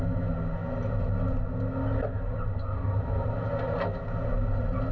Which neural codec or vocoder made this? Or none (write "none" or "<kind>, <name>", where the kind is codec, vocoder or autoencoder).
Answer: none